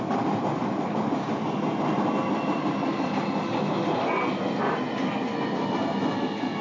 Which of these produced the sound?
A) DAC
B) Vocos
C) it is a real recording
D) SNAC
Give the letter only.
C